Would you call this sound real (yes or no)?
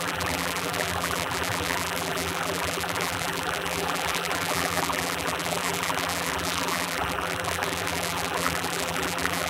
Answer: no